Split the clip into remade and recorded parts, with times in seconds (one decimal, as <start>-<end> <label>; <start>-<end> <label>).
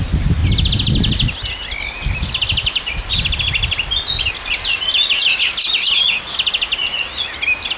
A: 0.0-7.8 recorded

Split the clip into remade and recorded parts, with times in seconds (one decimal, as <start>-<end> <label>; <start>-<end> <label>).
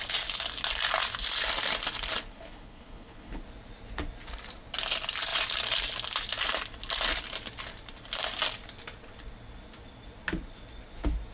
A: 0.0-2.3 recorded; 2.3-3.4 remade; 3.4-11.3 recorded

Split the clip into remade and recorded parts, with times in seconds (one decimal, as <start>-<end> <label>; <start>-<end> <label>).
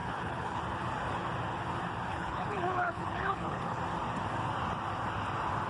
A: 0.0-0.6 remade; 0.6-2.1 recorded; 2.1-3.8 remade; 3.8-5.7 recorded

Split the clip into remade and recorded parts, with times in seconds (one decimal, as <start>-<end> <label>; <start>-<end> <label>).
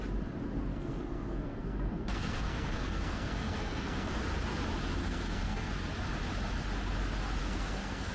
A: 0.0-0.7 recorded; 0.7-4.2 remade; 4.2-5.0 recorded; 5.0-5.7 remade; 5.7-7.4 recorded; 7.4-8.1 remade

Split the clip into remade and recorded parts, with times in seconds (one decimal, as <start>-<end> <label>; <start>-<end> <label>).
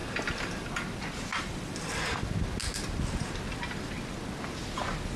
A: 0.0-0.7 remade; 0.7-1.3 recorded; 1.3-2.0 remade; 2.0-5.2 recorded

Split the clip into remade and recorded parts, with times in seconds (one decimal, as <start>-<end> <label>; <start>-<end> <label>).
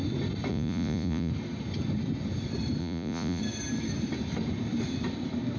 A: 0.0-0.5 recorded; 0.5-1.3 remade; 1.3-2.8 recorded; 2.8-3.4 remade; 3.4-5.6 recorded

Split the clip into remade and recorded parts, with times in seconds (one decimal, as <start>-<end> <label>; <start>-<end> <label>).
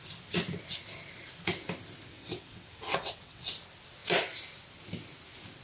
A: 0.0-2.1 recorded; 2.1-3.5 remade; 3.5-5.6 recorded